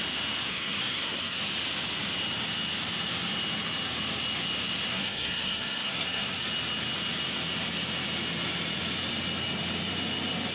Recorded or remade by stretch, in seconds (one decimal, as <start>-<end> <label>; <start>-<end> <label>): 0.0-0.5 recorded; 0.5-1.4 remade; 1.4-4.9 recorded; 4.9-6.4 remade; 6.4-10.5 recorded